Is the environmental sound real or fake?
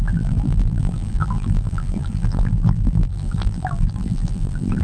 fake